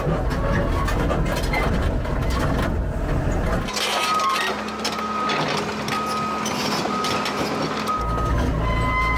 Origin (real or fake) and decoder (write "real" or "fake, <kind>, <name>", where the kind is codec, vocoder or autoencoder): real